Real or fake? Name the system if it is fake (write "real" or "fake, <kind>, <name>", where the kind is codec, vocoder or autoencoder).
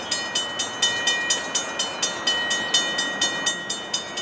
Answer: real